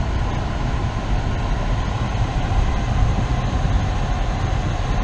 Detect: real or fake real